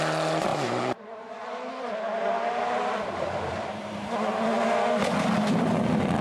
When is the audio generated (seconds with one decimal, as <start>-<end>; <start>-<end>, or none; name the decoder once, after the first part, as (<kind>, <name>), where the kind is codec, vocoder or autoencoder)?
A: 0.5-1.7 (vocoder, BigVGAN v2); 2.2-4.1